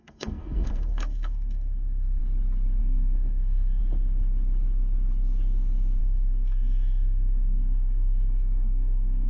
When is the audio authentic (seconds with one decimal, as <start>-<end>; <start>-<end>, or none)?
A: 2.2-2.8; 3.8-6.0